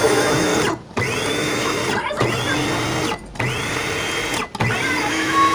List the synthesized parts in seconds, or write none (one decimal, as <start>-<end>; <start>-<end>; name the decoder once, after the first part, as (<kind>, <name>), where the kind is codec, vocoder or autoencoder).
0.0-0.5 (autoencoder, DAC-VAE); 1.3-1.8; 5.1-5.5